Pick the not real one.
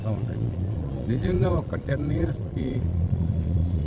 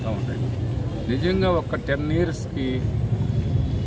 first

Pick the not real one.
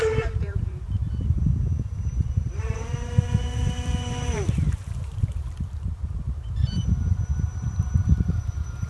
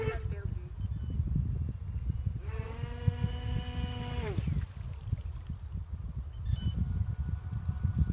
first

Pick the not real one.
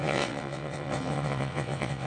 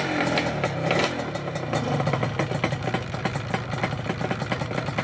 first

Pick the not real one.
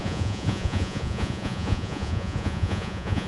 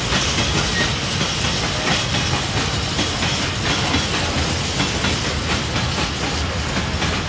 first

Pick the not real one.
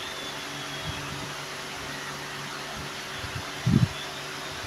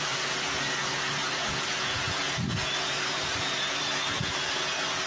second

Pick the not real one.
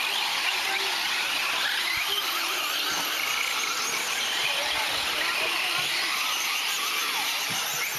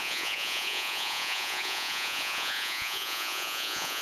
second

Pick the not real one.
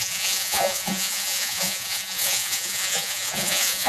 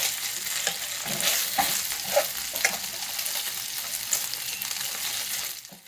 first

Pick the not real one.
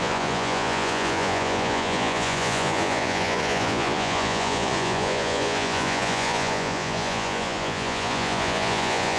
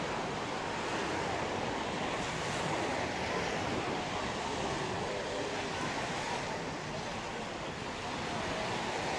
first